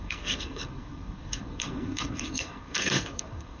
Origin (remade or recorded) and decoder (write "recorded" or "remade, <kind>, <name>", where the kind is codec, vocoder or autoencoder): remade, codec, SNAC